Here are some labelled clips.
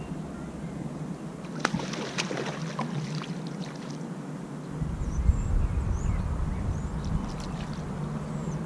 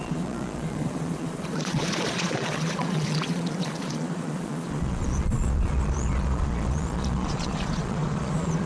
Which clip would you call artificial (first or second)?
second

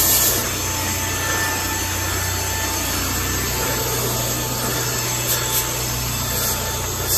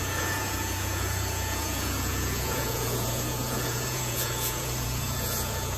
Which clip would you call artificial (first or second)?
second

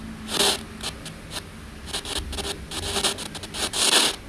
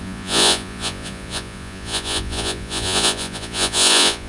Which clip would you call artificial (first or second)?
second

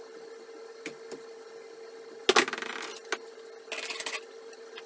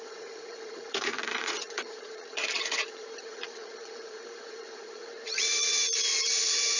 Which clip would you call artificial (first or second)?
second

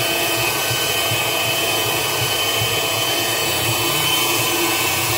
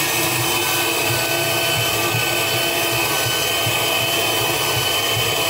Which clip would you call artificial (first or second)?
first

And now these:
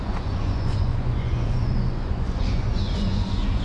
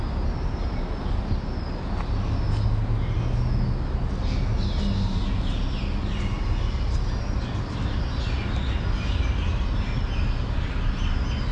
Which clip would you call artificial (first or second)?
first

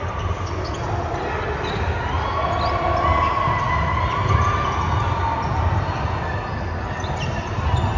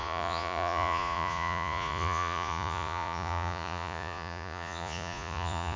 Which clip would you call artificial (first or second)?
second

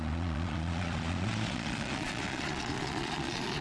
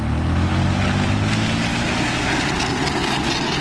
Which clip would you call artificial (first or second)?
first